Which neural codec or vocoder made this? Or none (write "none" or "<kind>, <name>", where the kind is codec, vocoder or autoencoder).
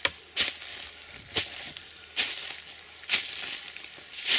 none